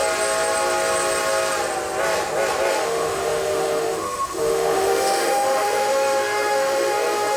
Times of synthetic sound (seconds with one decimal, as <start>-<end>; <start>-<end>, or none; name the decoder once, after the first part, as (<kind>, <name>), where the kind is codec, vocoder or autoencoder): 2.7-7.4 (autoencoder, DAC-VAE)